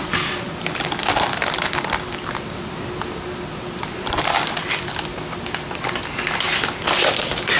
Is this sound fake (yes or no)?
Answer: no